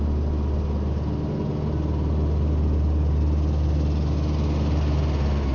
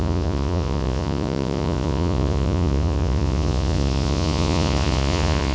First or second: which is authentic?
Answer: first